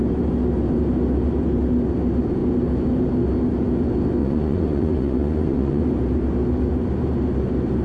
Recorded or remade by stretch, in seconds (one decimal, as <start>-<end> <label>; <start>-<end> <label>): 0.0-4.2 recorded; 4.2-5.8 remade; 5.8-7.8 recorded